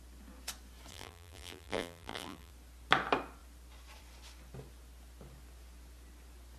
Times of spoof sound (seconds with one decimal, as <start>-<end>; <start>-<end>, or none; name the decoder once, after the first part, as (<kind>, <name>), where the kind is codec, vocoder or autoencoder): 0.9-2.5 (vocoder, BigVGAN v2)